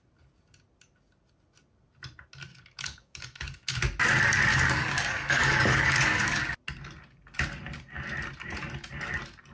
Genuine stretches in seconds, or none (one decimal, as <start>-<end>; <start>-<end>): 0.0-2.5; 3.8-4.5; 6.4-9.5